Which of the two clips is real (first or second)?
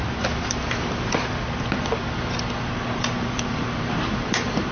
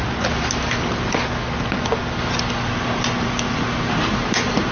second